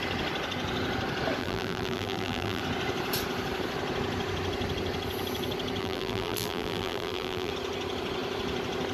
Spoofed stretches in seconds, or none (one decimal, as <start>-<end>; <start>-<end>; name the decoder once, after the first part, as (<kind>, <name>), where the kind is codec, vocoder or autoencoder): 1.4-2.6 (vocoder, BigVGAN v2); 5.8-7.5